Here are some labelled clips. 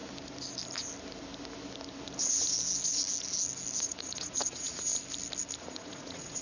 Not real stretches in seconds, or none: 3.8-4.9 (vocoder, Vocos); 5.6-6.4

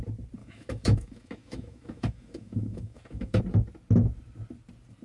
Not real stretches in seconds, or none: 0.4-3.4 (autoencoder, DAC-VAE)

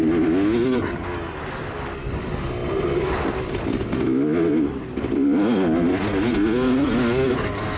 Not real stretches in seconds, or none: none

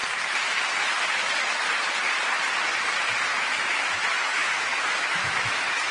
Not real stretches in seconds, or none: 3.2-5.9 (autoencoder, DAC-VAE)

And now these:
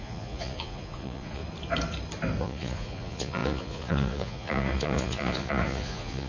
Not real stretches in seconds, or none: 0.0-1.4 (vocoder, Vocos); 2.4-6.3

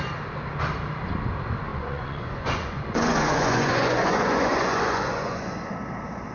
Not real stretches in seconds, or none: 1.7-5.5 (vocoder, Vocos)